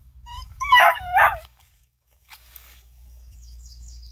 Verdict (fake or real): fake